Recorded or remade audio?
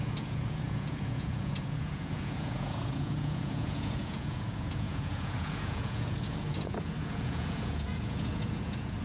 remade